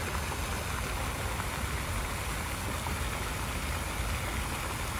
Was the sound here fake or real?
real